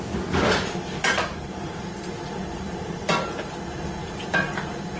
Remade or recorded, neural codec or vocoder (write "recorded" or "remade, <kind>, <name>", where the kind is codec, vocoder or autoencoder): recorded